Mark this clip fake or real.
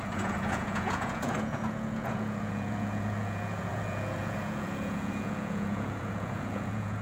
fake